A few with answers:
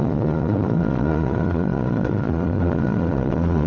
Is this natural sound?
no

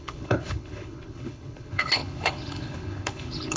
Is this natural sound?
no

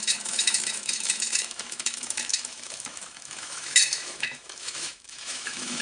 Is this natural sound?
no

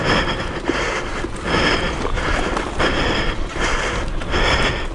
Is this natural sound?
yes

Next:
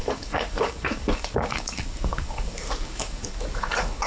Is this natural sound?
no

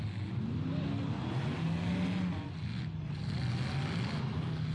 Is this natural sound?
yes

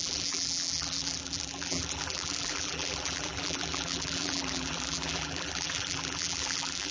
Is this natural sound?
no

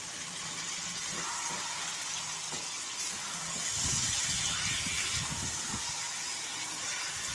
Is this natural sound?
yes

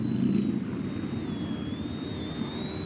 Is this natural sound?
yes